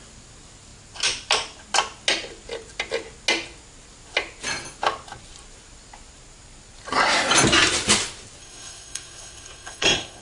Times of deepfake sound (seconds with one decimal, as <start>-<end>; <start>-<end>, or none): 8.4-10.2